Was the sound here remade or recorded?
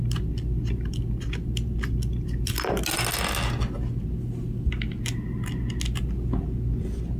recorded